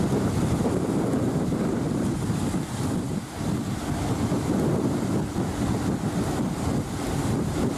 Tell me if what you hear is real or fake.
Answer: fake